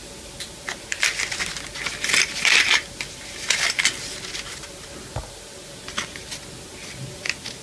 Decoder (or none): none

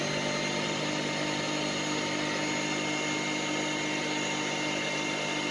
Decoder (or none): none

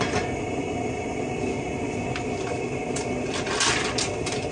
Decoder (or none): none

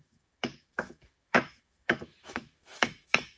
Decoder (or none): autoencoder, DAC-VAE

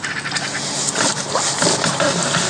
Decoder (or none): none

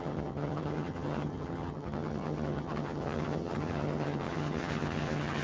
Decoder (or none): vocoder, HiFi-GAN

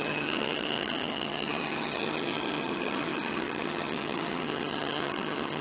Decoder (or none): vocoder, HiFi-GAN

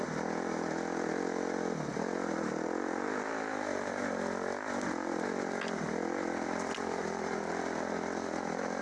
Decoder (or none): none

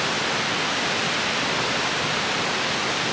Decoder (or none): none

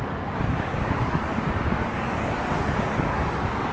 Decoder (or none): codec, DAC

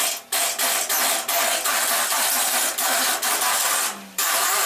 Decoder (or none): none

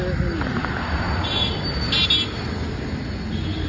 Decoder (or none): none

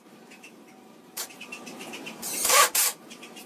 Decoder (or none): vocoder, BigVGAN v2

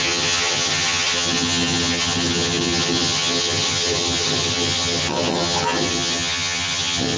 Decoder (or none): vocoder, HiFi-GAN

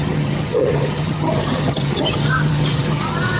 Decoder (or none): vocoder, HiFi-GAN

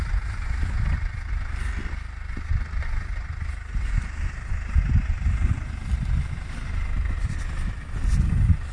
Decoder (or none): none